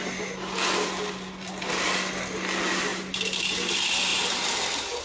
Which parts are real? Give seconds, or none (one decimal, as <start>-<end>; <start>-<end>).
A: 4.1-5.0